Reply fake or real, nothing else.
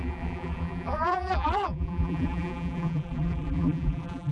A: fake